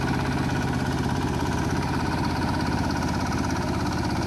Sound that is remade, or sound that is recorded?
recorded